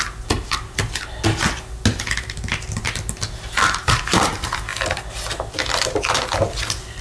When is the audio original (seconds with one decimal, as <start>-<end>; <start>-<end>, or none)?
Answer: 0.0-7.0